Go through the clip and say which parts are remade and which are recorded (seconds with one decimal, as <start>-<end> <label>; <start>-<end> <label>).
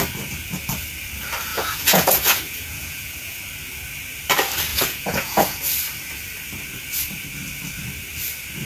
0.0-1.5 recorded; 1.5-3.4 remade; 3.4-4.7 recorded; 4.7-5.6 remade; 5.6-8.6 recorded